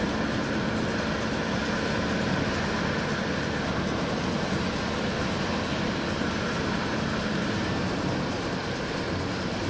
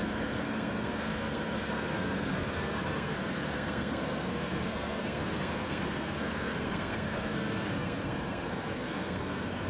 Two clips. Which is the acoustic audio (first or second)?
first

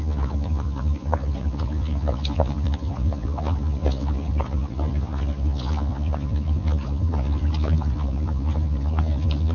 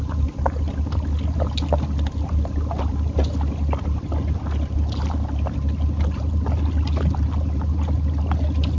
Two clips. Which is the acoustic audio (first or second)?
second